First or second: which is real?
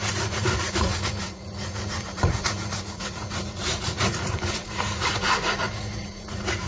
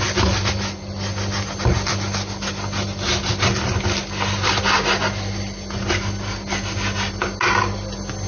second